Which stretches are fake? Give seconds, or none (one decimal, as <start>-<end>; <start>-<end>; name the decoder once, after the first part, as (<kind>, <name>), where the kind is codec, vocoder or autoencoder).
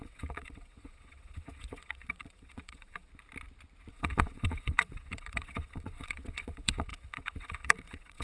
0.0-3.1 (vocoder, WaveNeXt); 3.9-8.2